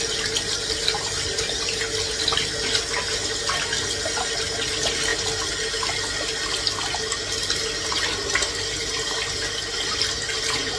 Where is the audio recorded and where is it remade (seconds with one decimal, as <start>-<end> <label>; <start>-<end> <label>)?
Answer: 0.0-10.8 recorded